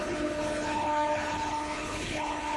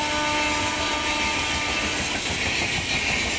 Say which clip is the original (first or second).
second